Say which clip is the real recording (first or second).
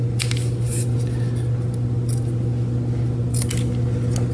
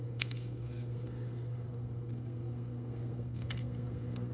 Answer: first